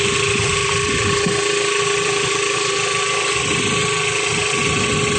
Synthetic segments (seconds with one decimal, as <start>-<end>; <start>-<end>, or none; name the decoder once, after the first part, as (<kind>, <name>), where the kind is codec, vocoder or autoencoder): 0.6-3.7 (vocoder, BigVGAN v2)